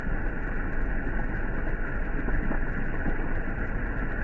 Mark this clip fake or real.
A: real